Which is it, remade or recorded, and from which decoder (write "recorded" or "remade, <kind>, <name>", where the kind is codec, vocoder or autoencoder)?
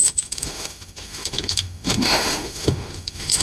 remade, autoencoder, DAC-VAE